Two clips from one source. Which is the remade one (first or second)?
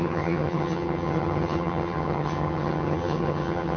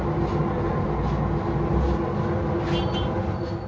first